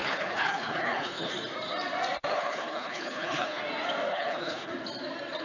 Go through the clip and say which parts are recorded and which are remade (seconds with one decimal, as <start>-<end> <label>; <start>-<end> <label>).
0.0-1.3 remade; 1.3-2.3 recorded; 2.3-3.6 remade; 3.6-4.1 recorded; 4.1-4.7 remade; 4.7-5.4 recorded